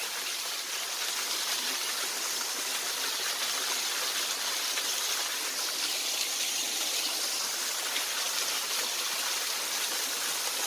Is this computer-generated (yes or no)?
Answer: no